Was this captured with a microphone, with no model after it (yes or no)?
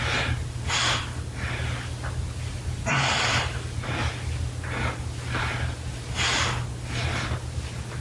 yes